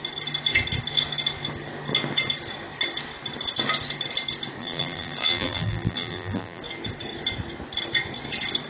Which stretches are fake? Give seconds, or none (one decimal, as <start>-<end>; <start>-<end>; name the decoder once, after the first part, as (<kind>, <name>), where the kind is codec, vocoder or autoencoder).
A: 4.6-6.6 (vocoder, BigVGAN v2)